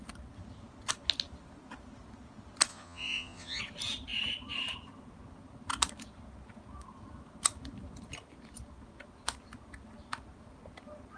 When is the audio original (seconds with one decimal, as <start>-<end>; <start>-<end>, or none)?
0.0-2.7; 3.6-11.2